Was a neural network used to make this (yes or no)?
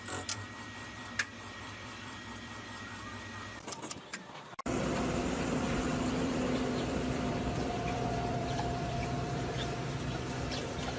yes